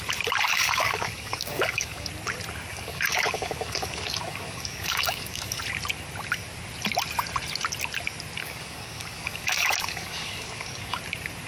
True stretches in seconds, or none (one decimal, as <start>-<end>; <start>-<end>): 0.0-0.5; 2.1-2.7; 5.6-8.4; 11.0-11.5